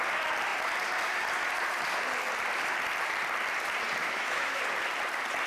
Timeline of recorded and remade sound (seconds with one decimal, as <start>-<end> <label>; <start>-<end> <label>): 0.0-4.0 recorded; 4.0-4.6 remade; 4.6-5.5 recorded